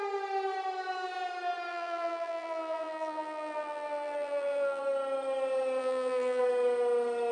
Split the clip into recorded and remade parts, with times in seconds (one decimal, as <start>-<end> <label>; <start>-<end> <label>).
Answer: 0.0-1.7 recorded; 1.7-4.8 remade; 4.8-5.8 recorded; 5.8-6.4 remade; 6.4-7.3 recorded